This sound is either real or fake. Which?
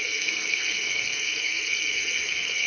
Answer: fake